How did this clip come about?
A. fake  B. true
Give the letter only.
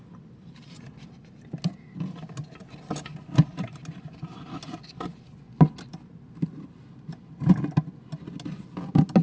B